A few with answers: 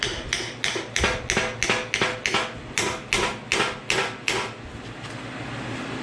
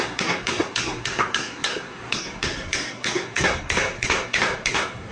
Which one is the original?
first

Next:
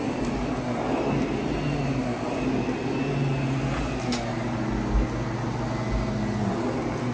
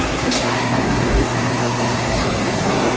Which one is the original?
first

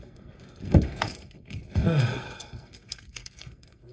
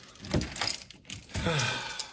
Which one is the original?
second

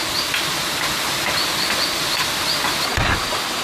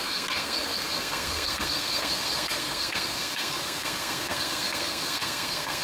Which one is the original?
first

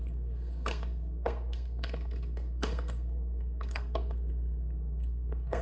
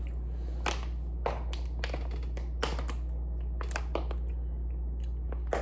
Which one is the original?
second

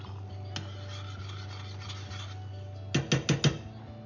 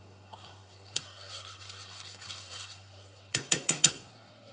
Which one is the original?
first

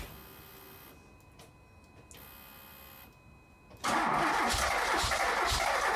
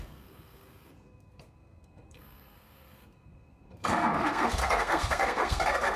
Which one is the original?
first